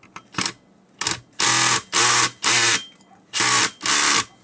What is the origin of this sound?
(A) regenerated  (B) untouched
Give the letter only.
B